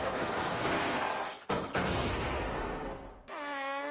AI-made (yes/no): yes